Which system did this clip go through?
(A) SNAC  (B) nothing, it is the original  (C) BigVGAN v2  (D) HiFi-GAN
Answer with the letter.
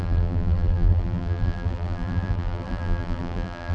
C